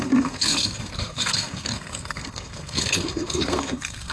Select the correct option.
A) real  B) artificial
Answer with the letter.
B